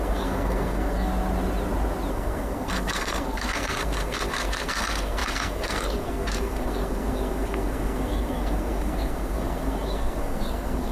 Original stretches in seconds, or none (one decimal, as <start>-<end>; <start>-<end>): 1.1-2.1